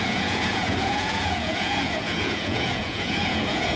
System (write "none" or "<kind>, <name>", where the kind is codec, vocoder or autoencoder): vocoder, Vocos